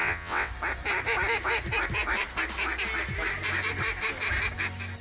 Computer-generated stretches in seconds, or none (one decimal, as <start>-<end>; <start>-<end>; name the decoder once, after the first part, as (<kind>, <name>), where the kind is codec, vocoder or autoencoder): 0.0-0.5 (vocoder, WaveNeXt)